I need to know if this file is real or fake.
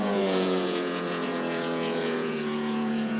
fake